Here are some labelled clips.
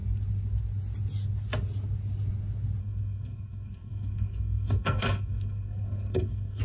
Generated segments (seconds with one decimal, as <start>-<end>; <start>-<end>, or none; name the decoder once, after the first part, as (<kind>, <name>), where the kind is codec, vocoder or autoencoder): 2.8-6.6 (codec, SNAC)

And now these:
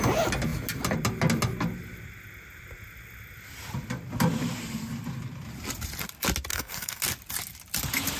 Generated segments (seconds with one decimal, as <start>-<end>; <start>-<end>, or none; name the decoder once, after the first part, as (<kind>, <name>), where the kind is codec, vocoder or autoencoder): 6.5-7.0 (codec, SNAC)

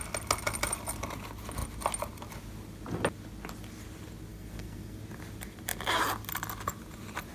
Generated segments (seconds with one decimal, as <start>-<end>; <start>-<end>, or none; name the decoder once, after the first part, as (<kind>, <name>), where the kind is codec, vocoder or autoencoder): 4.3-5.0 (codec, SNAC)

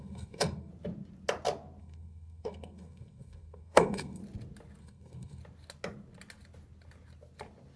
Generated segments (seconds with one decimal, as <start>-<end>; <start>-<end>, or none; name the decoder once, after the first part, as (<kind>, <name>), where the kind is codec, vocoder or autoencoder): 0.0-0.7 (codec, SNAC); 1.8-4.2; 4.8-5.4